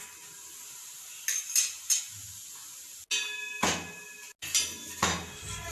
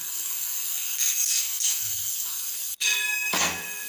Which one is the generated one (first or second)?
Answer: second